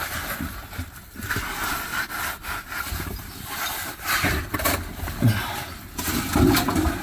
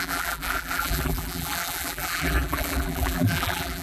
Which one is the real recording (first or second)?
first